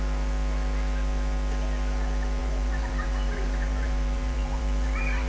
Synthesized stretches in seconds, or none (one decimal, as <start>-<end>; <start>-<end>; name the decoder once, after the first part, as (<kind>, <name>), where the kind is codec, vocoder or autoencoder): 2.4-5.3 (vocoder, BigVGAN v2)